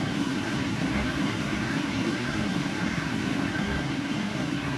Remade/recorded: remade